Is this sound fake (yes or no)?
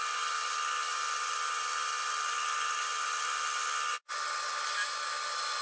no